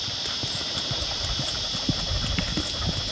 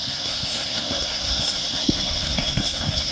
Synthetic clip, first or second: second